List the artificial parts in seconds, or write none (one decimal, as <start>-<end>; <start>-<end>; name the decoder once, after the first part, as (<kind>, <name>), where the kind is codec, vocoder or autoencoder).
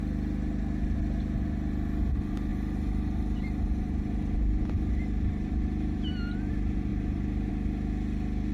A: 2.5-6.5 (vocoder, BigVGAN v2); 6.9-7.5